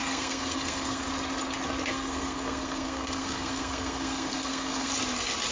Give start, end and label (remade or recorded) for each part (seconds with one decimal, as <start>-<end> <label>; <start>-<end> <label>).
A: 0.0-1.0 remade; 1.0-1.9 recorded; 1.9-4.9 remade; 4.9-5.5 recorded